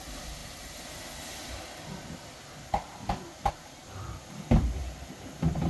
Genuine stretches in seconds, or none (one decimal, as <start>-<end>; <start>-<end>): 0.0-5.7